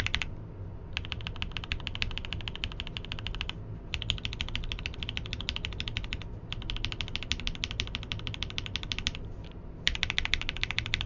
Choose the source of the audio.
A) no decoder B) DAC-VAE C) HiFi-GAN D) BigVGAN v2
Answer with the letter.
A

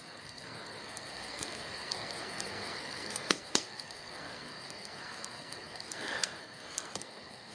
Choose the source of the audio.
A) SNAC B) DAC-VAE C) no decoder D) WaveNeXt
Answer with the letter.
A